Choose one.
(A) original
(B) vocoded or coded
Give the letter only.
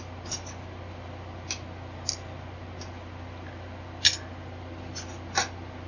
A